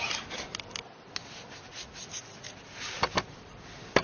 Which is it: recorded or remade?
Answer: recorded